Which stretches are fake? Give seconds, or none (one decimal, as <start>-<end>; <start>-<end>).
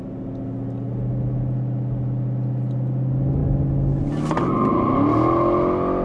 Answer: none